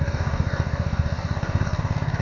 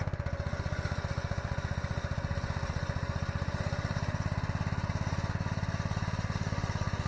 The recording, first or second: second